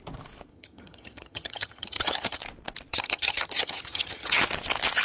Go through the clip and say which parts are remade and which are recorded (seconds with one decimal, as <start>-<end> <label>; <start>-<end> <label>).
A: 0.0-0.5 recorded; 0.5-2.4 remade; 2.4-2.9 recorded; 2.9-4.4 remade; 4.4-5.0 recorded